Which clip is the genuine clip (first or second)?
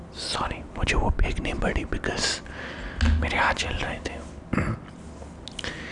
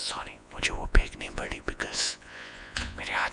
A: first